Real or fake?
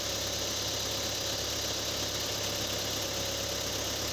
real